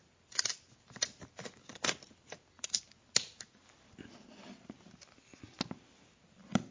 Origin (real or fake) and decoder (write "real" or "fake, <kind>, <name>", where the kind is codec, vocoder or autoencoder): real